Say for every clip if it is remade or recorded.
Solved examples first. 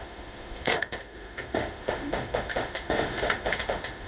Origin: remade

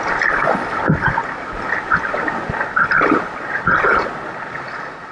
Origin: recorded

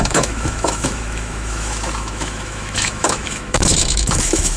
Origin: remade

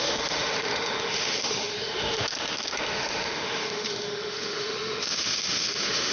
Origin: remade